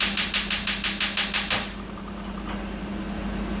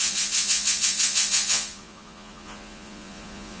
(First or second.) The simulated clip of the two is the second